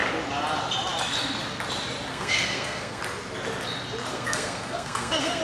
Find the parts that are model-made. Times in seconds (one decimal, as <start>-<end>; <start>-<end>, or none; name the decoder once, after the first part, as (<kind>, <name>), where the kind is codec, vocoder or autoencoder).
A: 2.1-3.0 (codec, SNAC); 4.1-5.4